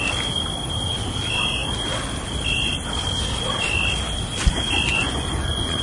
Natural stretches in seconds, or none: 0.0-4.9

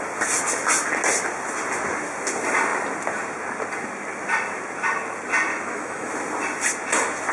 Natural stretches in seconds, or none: 0.0-5.5; 6.1-7.3

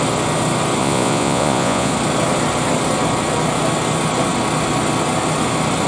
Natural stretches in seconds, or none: 0.0-0.8; 1.9-5.9

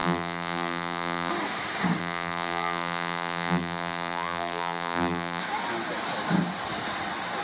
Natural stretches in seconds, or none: 1.3-2.0; 5.4-7.4

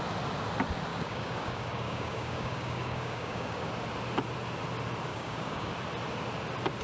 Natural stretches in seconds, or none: 0.0-0.9; 3.7-5.1; 5.7-6.8

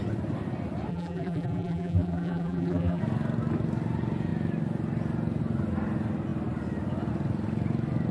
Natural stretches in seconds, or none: 0.0-0.9; 3.0-8.1

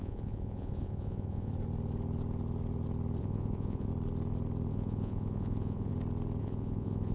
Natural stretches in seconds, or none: 1.5-3.2; 3.9-4.7; 5.9-6.4

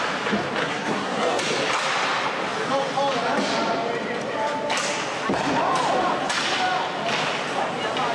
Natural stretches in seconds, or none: 0.0-0.6; 1.4-8.1